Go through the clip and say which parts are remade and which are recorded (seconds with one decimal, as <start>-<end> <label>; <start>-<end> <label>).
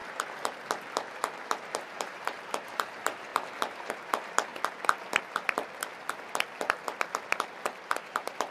0.0-1.6 recorded; 1.6-4.5 remade; 4.5-8.1 recorded; 8.1-8.5 remade